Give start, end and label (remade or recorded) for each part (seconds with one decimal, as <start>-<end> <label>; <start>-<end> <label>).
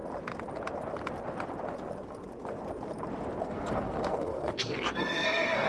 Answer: 0.0-3.4 recorded; 3.4-5.7 remade